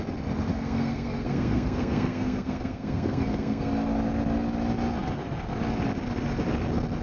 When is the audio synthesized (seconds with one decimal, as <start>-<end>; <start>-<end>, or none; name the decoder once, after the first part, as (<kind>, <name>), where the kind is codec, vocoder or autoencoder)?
0.5-3.7 (codec, SNAC)